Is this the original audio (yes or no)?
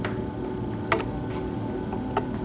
yes